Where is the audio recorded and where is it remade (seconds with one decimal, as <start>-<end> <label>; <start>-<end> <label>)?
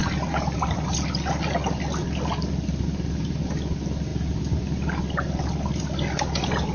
0.0-6.7 recorded